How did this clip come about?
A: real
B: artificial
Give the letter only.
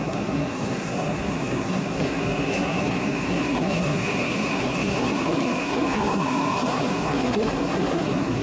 B